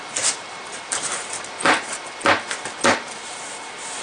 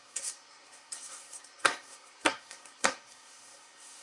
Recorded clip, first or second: first